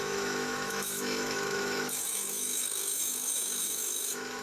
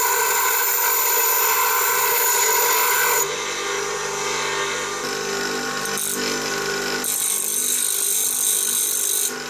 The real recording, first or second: second